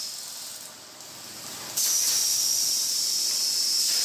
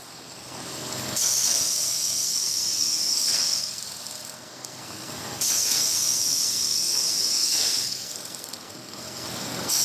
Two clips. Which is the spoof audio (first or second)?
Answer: second